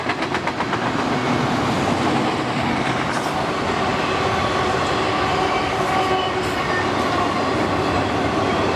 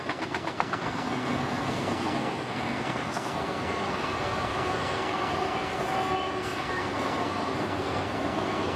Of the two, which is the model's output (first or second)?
second